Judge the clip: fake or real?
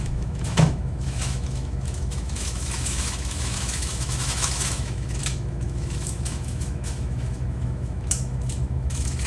fake